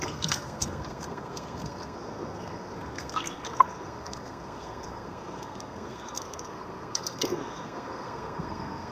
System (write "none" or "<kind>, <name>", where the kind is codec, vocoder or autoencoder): codec, SNAC